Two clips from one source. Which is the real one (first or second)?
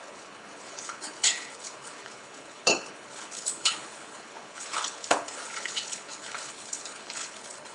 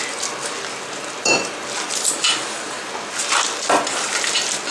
second